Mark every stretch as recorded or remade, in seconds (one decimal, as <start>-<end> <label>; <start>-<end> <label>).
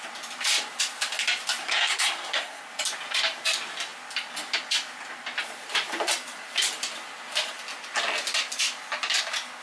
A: 0.0-1.6 recorded; 1.6-2.6 remade; 2.6-9.6 recorded